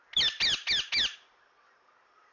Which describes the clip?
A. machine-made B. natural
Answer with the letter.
B